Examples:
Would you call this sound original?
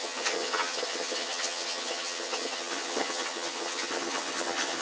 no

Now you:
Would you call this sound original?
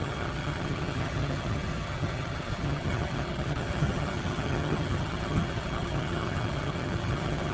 no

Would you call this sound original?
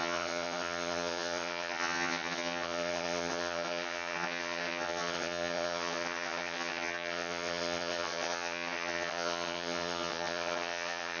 no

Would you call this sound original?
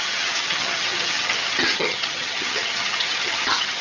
no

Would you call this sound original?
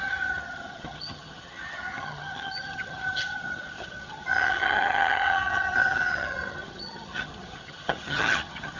no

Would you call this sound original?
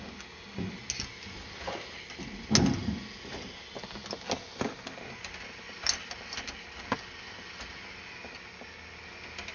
yes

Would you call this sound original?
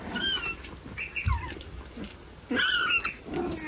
yes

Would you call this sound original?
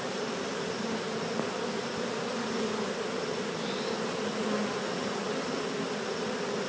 yes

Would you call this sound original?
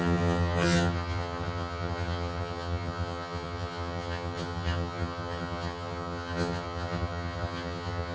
no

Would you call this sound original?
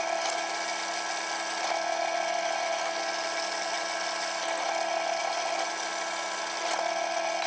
yes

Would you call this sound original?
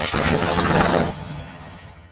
no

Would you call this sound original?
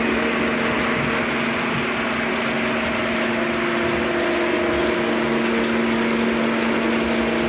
yes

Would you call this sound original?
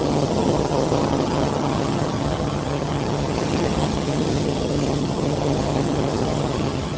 no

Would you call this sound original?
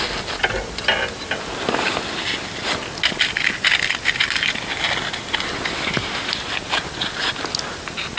yes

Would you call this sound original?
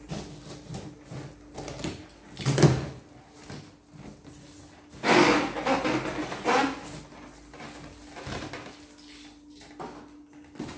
yes